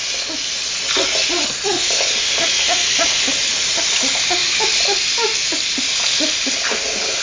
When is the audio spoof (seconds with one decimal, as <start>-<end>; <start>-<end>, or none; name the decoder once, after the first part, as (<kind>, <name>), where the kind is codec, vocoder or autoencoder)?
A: none